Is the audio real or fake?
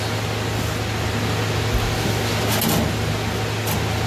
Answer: real